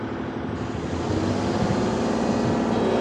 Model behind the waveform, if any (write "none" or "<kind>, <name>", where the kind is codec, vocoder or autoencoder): none